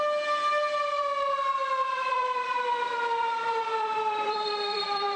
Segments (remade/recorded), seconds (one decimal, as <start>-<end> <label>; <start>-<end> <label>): 0.0-1.8 recorded; 1.8-5.2 remade